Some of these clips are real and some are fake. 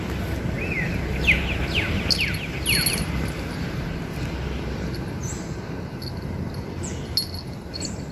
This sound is real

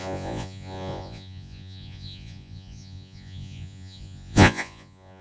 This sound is fake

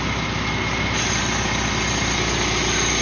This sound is real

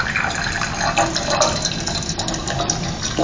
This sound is real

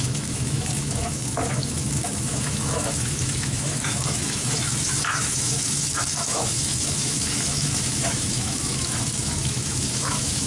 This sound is fake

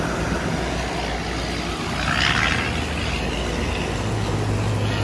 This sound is real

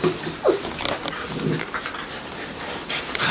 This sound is real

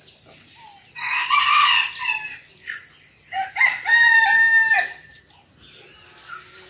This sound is real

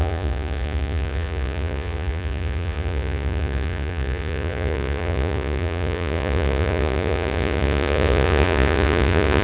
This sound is fake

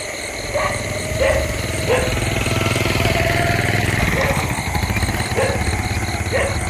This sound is real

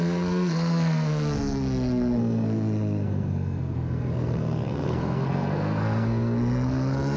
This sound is fake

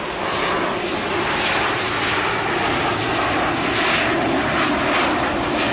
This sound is real